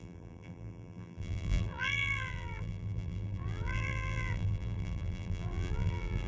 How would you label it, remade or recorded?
remade